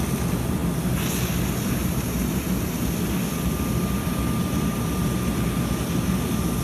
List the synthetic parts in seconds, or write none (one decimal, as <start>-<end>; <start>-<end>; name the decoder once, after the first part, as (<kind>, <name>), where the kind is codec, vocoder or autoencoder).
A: none